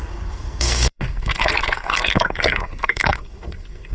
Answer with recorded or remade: remade